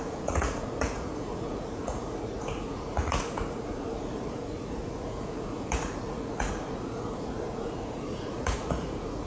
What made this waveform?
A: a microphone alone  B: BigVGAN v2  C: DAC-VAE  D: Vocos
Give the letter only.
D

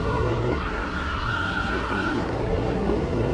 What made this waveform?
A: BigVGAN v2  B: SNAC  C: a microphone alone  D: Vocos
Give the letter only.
B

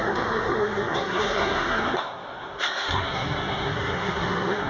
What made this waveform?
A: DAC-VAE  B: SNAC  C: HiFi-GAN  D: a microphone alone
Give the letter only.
B